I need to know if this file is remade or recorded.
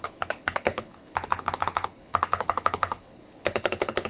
remade